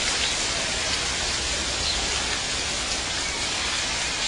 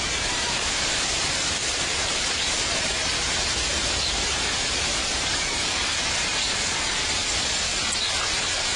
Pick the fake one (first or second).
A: second